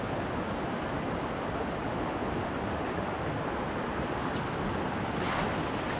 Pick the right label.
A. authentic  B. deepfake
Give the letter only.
A